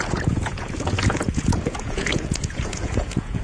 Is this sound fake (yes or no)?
yes